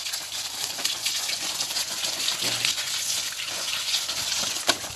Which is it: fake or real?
fake